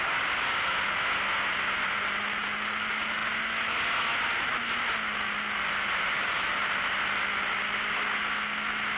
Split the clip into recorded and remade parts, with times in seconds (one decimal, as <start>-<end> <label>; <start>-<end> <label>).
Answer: 0.0-9.0 recorded